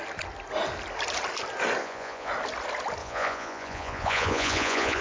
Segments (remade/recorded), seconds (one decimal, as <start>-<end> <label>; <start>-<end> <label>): 0.0-1.8 recorded; 1.8-2.3 remade; 2.3-3.0 recorded; 3.0-5.0 remade